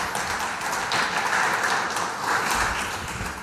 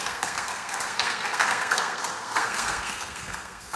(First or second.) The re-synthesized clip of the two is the second